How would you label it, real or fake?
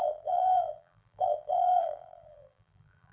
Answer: fake